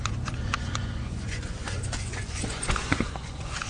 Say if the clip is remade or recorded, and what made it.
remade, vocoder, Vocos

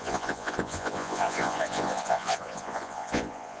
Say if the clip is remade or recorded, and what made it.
remade, vocoder, Vocos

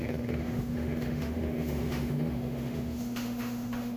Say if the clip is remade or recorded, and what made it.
remade, autoencoder, DAC-VAE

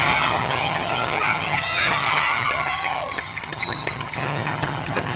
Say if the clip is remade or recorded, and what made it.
remade, vocoder, HiFi-GAN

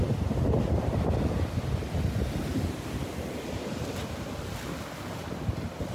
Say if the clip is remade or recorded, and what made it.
recorded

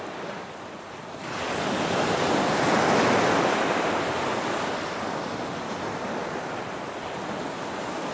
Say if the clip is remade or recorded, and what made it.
recorded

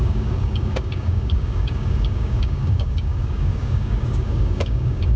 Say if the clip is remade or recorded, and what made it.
remade, codec, DAC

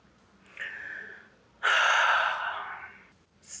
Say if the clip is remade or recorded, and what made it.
recorded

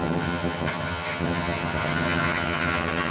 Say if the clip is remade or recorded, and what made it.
remade, vocoder, HiFi-GAN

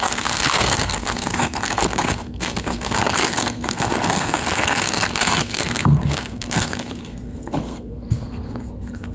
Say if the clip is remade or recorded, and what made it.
remade, codec, SNAC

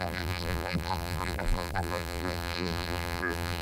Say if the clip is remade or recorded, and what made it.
remade, vocoder, BigVGAN v2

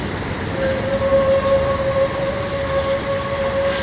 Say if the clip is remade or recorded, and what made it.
recorded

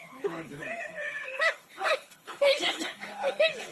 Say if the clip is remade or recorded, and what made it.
remade, codec, HILCodec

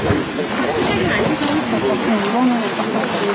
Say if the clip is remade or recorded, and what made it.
recorded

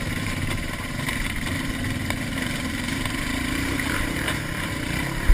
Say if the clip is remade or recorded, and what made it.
remade, vocoder, BigVGAN v2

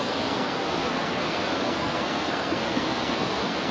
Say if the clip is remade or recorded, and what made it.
remade, codec, SNAC